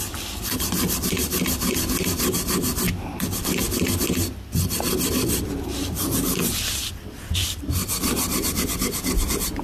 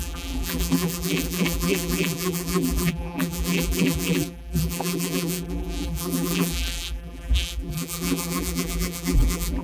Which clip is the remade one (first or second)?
second